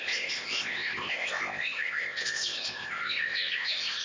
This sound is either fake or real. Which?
fake